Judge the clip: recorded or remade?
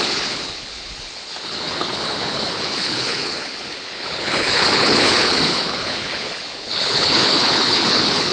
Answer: remade